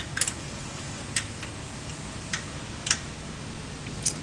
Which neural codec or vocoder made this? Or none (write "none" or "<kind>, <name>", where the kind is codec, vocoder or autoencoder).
none